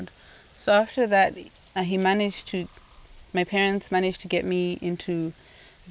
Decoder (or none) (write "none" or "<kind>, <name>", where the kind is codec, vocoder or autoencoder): none